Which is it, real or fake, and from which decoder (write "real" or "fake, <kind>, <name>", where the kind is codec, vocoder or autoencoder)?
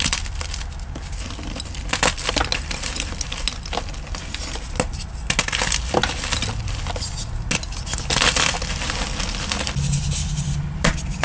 real